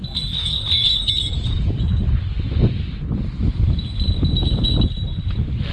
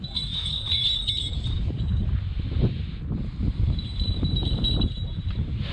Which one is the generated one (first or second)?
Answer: second